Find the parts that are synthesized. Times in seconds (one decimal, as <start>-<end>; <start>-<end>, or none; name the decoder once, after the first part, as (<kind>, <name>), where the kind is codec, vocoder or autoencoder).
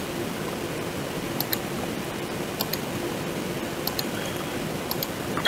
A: none